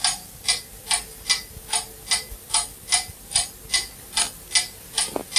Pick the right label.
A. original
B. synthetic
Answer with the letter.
A